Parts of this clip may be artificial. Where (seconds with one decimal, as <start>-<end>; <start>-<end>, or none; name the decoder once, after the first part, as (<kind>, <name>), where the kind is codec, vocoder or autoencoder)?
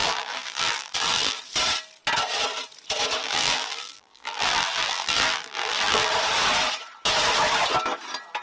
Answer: 0.0-1.4 (vocoder, BigVGAN v2); 3.2-6.1